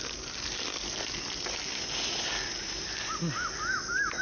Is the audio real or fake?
real